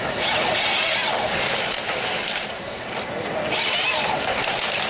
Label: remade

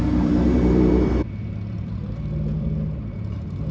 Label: remade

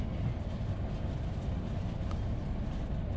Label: recorded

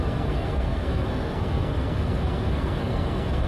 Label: remade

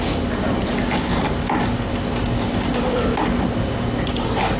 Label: recorded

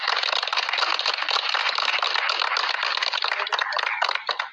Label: recorded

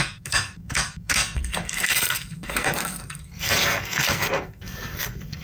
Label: remade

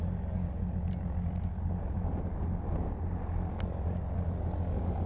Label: recorded